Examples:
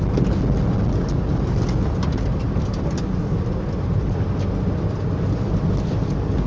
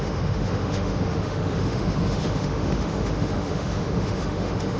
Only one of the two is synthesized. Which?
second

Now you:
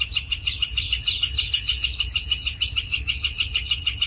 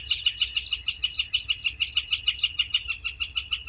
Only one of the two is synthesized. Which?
first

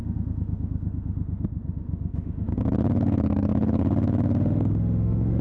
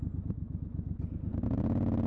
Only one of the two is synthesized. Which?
first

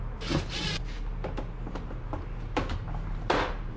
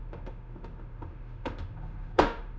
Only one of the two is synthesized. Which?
second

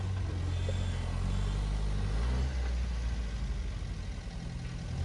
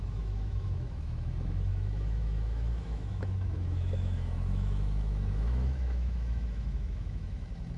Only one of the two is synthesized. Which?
second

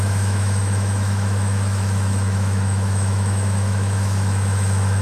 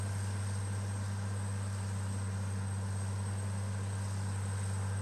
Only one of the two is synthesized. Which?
first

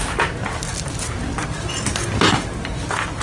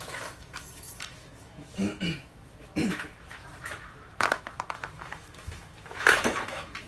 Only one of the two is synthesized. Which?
second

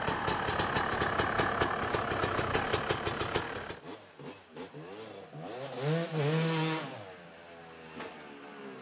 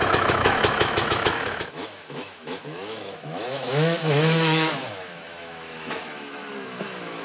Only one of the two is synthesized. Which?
second